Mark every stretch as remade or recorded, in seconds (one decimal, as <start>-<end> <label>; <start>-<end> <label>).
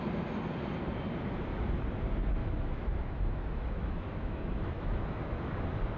0.0-2.4 recorded; 2.4-5.6 remade; 5.6-6.0 recorded